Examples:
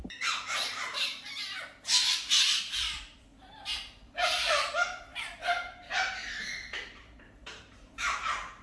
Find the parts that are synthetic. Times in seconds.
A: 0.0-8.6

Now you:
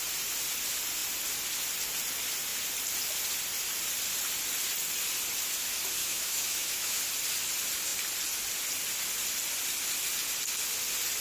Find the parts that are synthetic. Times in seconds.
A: 6.0-7.0

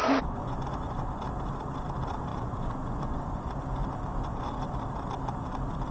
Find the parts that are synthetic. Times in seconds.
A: 0.0-1.2; 2.3-3.5; 4.3-4.8

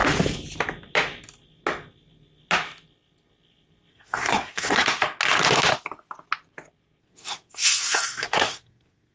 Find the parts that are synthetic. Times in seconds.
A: 3.9-5.0; 7.0-9.1

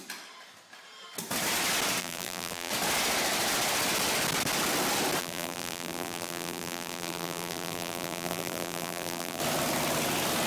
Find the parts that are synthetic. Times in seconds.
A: 2.0-2.7; 5.2-9.4